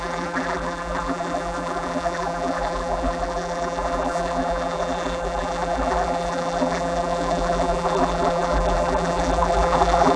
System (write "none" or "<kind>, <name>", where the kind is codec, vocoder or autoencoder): vocoder, BigVGAN v2